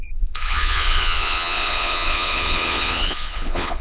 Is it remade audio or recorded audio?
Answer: remade